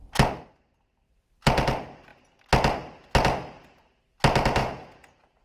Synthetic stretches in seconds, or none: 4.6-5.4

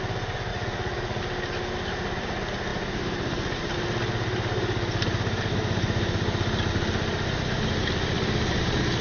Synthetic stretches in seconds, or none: 0.5-1.2

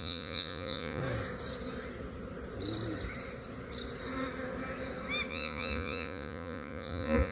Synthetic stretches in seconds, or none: 0.0-1.0; 5.3-7.3

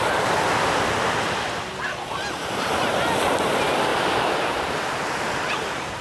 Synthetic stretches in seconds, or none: none